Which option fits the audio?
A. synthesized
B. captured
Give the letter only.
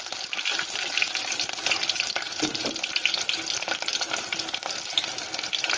B